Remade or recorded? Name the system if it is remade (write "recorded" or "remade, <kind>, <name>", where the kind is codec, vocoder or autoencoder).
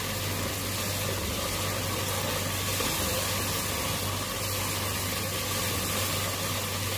recorded